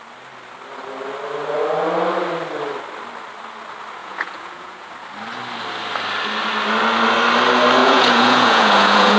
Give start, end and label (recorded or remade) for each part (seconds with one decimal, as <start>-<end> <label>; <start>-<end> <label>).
0.0-4.0 recorded; 4.0-4.9 remade; 4.9-7.8 recorded; 7.8-9.2 remade